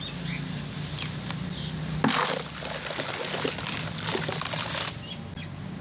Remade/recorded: recorded